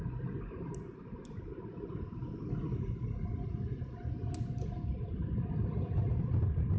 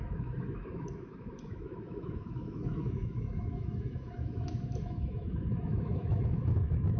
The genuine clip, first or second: first